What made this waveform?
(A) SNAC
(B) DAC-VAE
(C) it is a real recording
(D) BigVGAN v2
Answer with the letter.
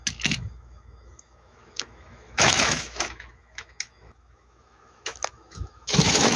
B